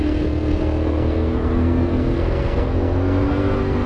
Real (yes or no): no